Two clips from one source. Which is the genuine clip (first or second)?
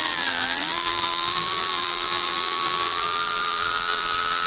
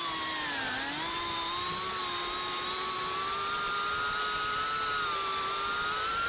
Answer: second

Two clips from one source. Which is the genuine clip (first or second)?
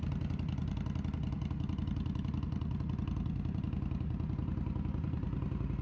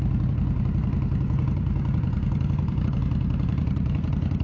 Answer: first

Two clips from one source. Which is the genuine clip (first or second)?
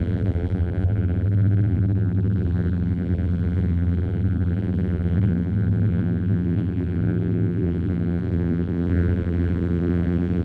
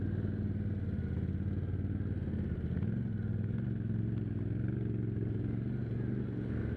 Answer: second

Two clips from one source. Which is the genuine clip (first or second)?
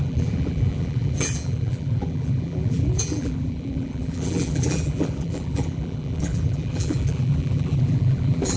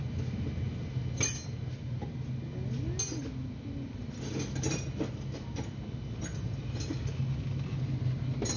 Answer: second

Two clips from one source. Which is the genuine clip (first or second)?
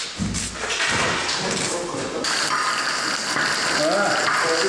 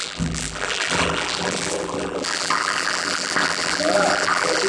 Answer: first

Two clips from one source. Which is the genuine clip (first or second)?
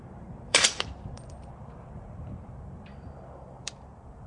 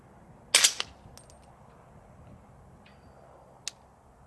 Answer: second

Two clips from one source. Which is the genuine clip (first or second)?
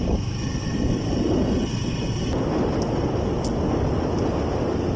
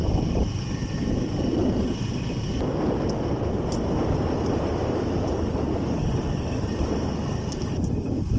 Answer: first